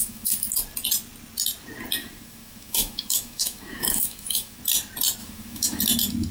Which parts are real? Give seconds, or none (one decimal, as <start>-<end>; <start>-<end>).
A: 0.5-2.0; 4.6-5.2; 5.8-6.3